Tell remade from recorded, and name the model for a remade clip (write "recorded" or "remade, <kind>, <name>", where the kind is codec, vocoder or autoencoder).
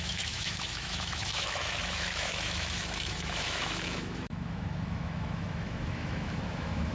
remade, autoencoder, DAC-VAE